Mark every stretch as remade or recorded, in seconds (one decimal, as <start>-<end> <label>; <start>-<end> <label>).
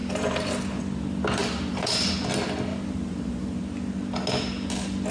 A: 0.0-0.8 remade; 0.8-1.4 recorded; 1.4-2.1 remade; 2.1-2.7 recorded; 2.7-3.6 remade; 3.6-5.1 recorded